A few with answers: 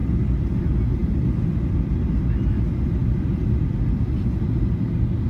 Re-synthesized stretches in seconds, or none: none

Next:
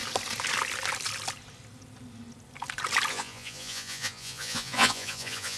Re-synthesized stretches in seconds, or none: 3.1-5.6 (vocoder, Vocos)

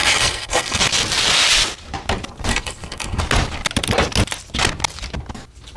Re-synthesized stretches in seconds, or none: 0.0-0.8 (codec, SNAC); 2.5-3.2

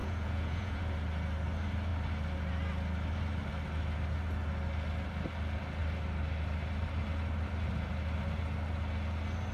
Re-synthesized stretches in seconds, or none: 0.0-0.8 (vocoder, Vocos)

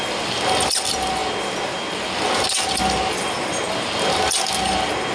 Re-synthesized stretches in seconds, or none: none

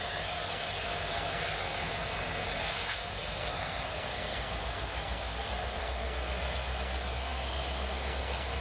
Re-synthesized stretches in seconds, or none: 0.0-8.6 (codec, SNAC)

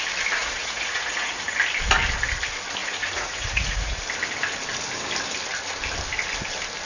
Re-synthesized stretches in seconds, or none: 0.4-1.4 (vocoder, Vocos); 2.8-4.0